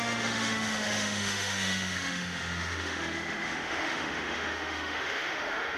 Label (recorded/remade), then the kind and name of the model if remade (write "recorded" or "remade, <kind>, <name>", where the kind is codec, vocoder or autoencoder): remade, autoencoder, DAC-VAE